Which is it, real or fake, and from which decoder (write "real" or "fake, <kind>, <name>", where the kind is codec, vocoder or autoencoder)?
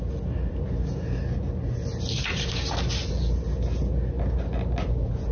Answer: real